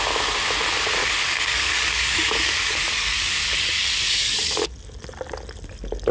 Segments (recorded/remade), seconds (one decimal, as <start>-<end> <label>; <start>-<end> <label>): 0.0-1.0 recorded; 1.0-4.7 remade; 4.7-6.1 recorded